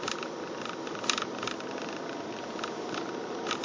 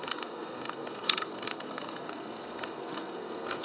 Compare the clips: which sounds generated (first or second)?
second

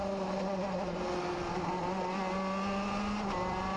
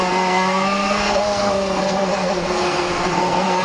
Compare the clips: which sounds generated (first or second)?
second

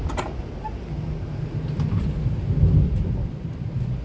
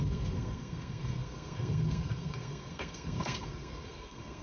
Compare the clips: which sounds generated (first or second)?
second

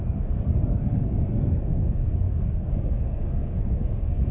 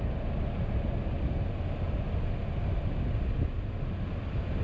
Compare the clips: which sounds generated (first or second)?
first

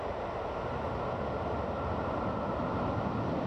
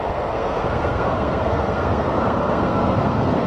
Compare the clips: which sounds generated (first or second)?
second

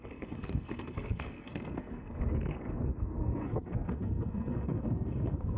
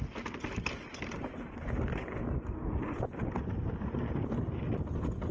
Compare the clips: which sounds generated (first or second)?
first